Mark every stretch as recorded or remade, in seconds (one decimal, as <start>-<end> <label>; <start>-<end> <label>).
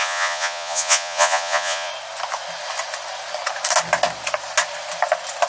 0.0-1.9 remade; 1.9-5.5 recorded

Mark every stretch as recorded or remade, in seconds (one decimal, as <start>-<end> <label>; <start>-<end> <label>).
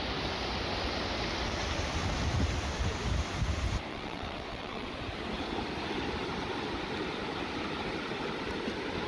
0.0-3.9 recorded; 3.9-4.9 remade; 4.9-9.1 recorded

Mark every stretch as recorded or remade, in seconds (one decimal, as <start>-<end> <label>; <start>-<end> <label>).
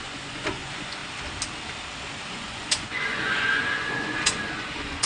0.0-1.0 remade; 1.0-2.3 recorded; 2.3-5.1 remade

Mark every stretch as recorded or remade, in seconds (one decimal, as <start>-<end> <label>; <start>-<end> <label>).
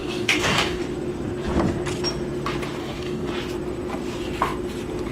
0.0-0.8 remade; 0.8-2.8 recorded; 2.8-3.3 remade; 3.3-5.1 recorded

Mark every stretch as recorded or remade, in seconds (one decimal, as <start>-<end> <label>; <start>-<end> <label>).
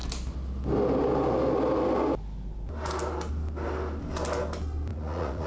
0.0-4.9 recorded; 4.9-5.5 remade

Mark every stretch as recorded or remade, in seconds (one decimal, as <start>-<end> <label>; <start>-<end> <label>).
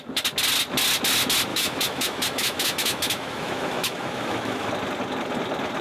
0.0-1.5 recorded; 1.5-4.7 remade; 4.7-5.8 recorded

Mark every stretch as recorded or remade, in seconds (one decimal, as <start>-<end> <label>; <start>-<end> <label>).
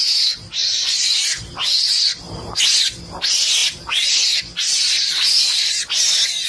0.0-0.6 recorded; 0.6-2.6 remade; 2.6-3.6 recorded; 3.6-5.7 remade; 5.7-6.5 recorded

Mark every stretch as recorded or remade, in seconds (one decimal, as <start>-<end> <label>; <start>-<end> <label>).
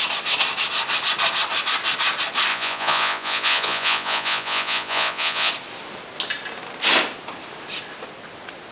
0.0-2.5 recorded; 2.5-5.5 remade; 5.5-8.7 recorded